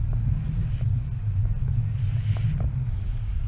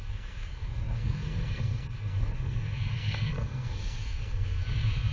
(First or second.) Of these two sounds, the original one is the first